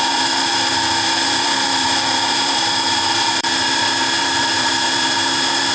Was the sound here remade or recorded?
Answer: remade